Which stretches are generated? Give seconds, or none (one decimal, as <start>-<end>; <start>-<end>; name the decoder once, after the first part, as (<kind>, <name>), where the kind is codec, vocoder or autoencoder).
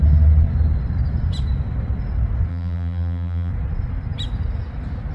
2.5-3.5 (vocoder, BigVGAN v2)